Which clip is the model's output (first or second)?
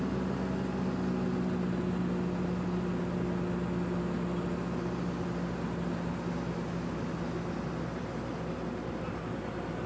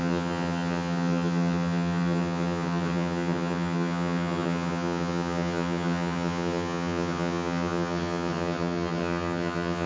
second